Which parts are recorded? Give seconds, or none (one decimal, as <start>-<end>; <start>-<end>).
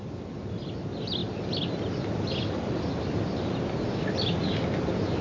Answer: 0.0-5.2